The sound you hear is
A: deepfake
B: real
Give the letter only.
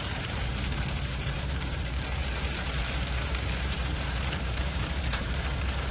A